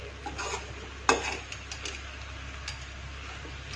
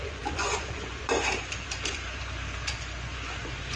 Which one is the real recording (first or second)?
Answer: first